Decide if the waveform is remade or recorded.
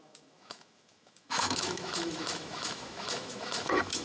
remade